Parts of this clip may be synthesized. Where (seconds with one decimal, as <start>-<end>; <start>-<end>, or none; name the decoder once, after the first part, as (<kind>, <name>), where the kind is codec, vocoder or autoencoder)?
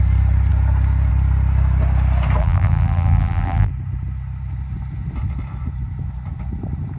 2.4-3.7 (vocoder, BigVGAN v2)